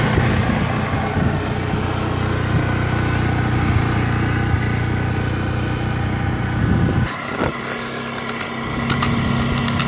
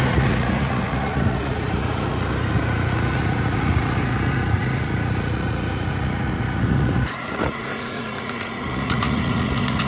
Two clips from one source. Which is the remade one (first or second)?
second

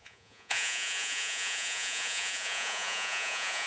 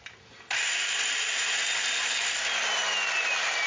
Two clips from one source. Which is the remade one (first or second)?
first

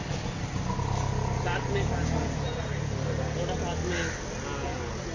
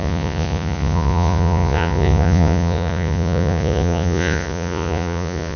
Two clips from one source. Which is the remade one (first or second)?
second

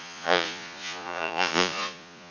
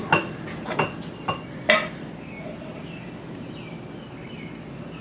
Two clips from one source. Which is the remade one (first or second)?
first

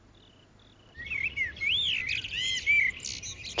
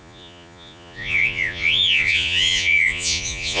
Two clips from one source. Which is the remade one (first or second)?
second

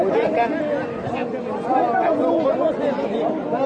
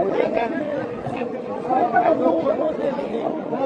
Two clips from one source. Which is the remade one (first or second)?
second